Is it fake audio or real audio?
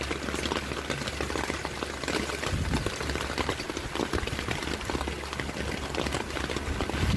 real